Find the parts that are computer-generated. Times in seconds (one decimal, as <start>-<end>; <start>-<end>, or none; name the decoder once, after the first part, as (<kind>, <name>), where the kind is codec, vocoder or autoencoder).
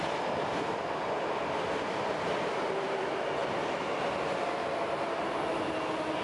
none